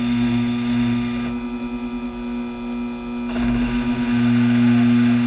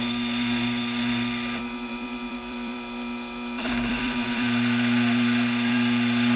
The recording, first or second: first